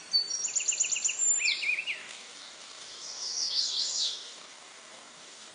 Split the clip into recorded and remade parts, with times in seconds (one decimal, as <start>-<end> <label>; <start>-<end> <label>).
0.0-2.0 recorded; 2.0-5.5 remade